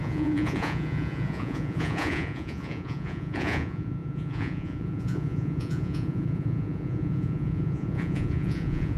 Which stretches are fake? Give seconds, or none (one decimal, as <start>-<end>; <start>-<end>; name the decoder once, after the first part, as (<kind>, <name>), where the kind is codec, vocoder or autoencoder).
0.0-9.0 (vocoder, Vocos)